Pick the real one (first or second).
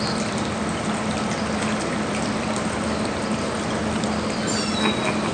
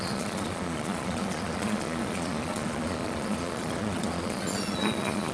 first